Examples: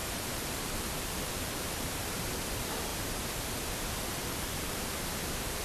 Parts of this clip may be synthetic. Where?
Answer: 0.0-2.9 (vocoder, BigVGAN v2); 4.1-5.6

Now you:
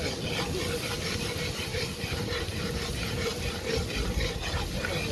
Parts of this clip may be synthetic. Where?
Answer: 1.7-3.4 (vocoder, BigVGAN v2)

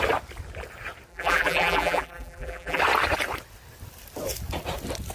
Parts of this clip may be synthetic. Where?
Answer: 1.1-2.8 (vocoder, BigVGAN v2)

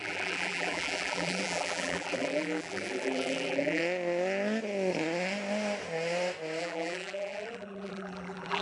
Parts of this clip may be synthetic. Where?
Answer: 0.0-3.8 (vocoder, BigVGAN v2); 6.6-8.6

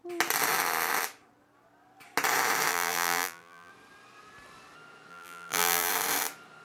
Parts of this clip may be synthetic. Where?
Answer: 2.7-3.7 (vocoder, BigVGAN v2); 5.1-5.9

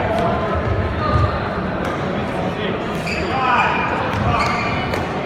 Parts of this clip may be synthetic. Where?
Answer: 0.5-1.3 (vocoder, BigVGAN v2); 2.2-4.7